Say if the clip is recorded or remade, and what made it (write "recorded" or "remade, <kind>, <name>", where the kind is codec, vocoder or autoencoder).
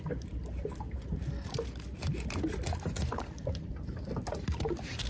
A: recorded